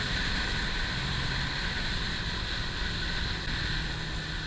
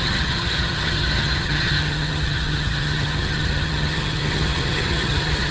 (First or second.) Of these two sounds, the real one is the first